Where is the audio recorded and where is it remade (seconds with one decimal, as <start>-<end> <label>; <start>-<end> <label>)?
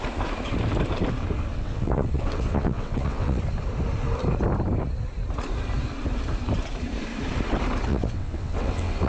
0.0-1.5 recorded; 1.5-3.4 remade; 3.4-7.9 recorded; 7.9-9.1 remade